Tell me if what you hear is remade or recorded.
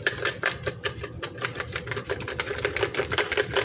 recorded